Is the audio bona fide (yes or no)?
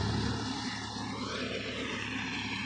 yes